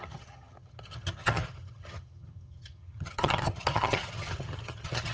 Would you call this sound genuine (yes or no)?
no